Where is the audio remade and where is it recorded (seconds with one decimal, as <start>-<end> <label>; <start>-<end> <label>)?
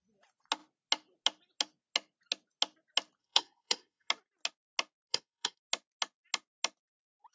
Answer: 0.0-3.2 recorded; 3.2-4.1 remade; 4.1-5.1 recorded; 5.1-5.6 remade; 5.6-7.3 recorded